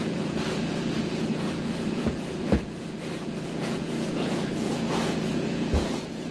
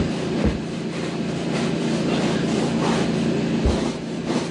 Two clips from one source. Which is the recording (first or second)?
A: second